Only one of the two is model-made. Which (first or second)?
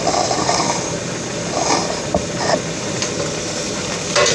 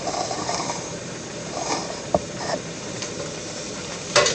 second